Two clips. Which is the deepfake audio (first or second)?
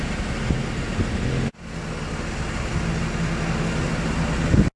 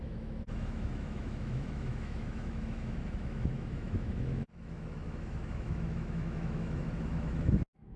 second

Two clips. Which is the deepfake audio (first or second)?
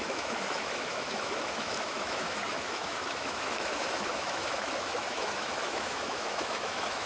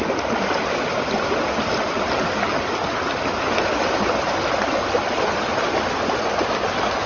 first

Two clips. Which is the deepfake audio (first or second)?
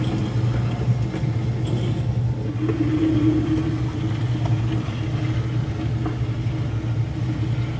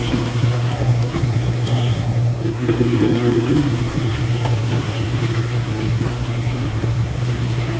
second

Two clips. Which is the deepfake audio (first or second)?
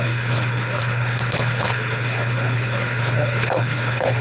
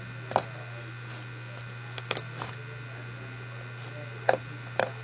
first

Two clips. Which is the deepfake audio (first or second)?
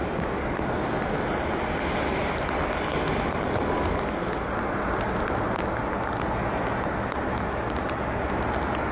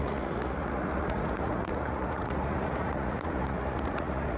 second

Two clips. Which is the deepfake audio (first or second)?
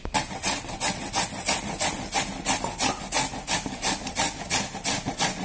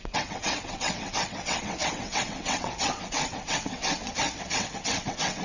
second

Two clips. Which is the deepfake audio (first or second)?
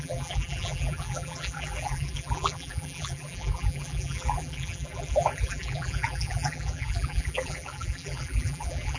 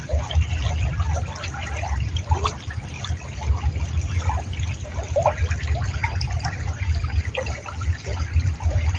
first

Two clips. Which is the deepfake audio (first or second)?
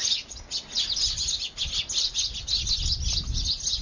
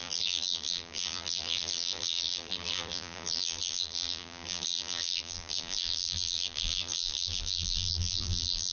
second